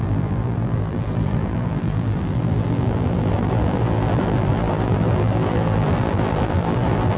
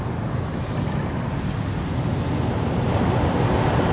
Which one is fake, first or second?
first